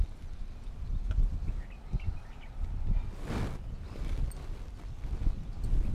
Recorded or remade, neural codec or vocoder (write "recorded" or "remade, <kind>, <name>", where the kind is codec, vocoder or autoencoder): recorded